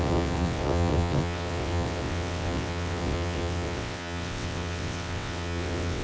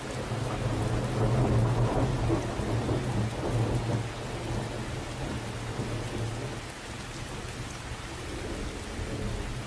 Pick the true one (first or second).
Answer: second